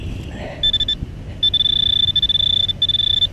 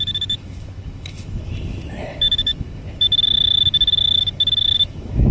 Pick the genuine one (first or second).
first